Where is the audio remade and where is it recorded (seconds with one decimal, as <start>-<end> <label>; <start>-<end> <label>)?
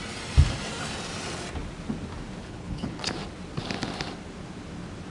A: 0.0-2.4 recorded; 2.4-3.0 remade; 3.0-5.1 recorded